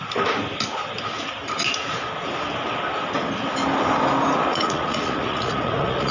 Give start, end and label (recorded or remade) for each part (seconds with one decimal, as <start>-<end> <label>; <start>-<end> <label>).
0.0-4.5 recorded; 4.5-6.1 remade

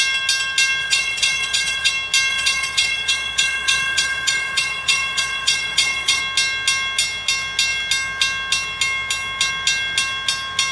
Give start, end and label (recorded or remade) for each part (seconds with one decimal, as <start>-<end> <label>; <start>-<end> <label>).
0.0-0.8 recorded; 0.8-1.9 remade; 1.9-2.3 recorded; 2.3-6.2 remade; 6.2-10.7 recorded

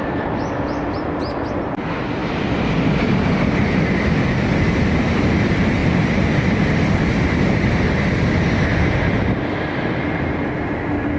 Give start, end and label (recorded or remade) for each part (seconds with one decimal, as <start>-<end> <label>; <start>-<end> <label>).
0.0-11.2 recorded